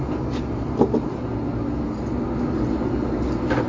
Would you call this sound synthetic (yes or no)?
no